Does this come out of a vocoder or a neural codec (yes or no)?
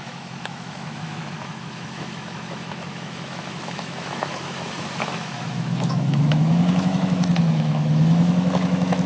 yes